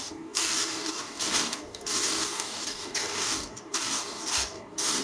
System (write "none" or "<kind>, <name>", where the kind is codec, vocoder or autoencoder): codec, DAC